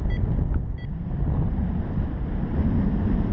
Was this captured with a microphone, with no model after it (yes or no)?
yes